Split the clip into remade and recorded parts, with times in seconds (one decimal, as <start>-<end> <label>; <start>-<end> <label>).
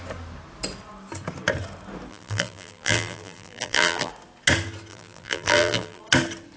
0.0-2.1 recorded; 2.1-4.1 remade; 4.1-4.9 recorded; 4.9-6.0 remade; 6.0-6.6 recorded